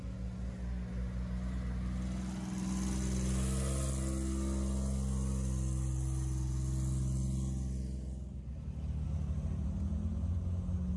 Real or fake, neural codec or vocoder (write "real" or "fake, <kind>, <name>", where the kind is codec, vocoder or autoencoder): real